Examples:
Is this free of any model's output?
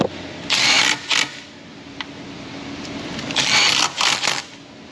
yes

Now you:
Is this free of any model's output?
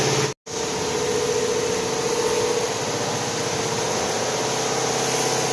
yes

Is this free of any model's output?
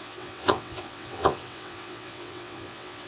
no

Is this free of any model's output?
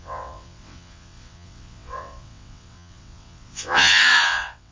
no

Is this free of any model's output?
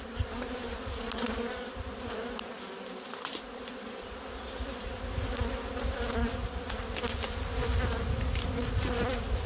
yes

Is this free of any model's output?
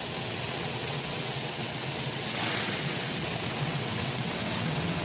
no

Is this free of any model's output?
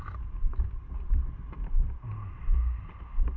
yes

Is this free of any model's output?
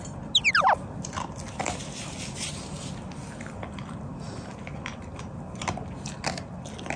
yes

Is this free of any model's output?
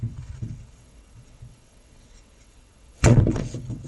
no